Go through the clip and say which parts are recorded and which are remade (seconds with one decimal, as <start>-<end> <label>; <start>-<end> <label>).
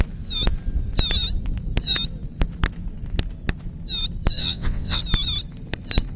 0.0-4.4 recorded; 4.4-5.0 remade; 5.0-6.2 recorded